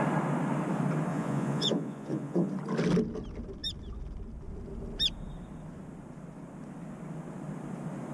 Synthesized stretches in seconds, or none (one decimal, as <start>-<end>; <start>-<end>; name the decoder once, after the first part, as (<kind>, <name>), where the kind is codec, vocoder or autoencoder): 1.1-2.5 (vocoder, Vocos)